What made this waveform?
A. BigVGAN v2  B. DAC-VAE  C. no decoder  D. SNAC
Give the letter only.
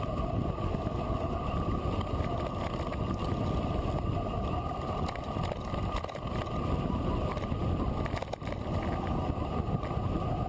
C